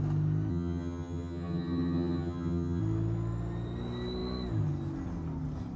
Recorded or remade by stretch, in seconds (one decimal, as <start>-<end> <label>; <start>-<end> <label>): 0.0-0.5 recorded; 0.5-2.8 remade; 2.8-5.8 recorded